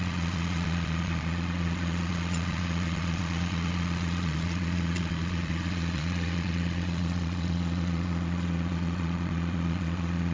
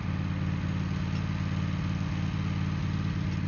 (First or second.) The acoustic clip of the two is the second